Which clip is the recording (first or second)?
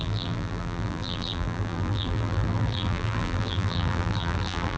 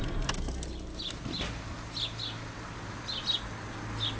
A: second